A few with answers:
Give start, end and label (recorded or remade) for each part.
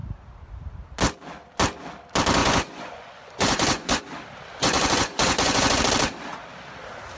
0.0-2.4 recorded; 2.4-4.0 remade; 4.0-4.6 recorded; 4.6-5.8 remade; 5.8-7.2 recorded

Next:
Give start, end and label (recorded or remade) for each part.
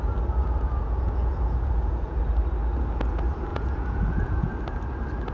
0.0-0.4 recorded; 0.4-2.2 remade; 2.2-3.5 recorded; 3.5-4.5 remade; 4.5-5.3 recorded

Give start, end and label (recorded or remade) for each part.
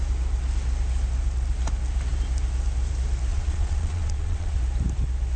0.0-3.3 recorded; 3.3-4.6 remade; 4.6-5.4 recorded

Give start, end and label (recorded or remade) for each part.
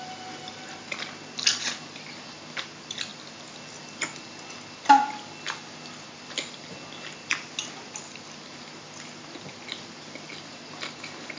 0.0-11.4 recorded